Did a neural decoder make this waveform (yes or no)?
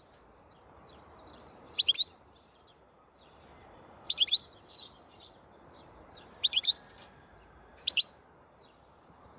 yes